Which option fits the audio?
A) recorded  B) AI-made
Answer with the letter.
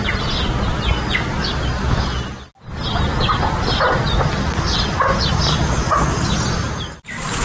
A